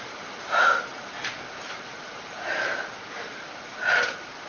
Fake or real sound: fake